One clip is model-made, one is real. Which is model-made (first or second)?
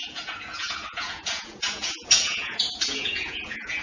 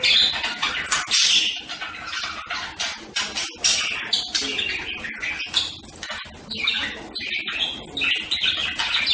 first